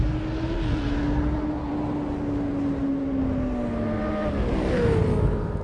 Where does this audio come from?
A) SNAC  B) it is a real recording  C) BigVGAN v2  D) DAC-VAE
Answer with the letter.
B